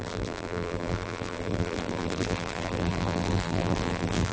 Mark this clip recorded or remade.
remade